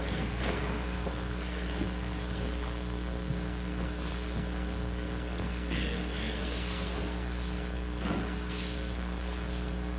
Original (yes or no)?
no